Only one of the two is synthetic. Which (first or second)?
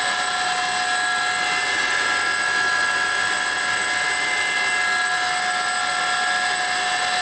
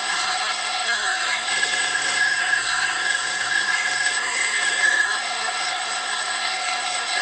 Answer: second